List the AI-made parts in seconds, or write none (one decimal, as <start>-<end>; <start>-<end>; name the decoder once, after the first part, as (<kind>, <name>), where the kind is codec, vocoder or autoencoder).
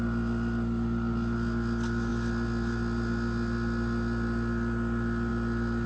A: none